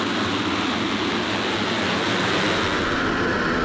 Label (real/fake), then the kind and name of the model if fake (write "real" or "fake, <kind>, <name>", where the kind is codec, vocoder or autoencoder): real